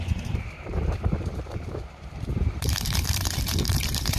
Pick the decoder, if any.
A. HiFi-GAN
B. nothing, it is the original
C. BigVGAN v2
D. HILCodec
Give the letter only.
C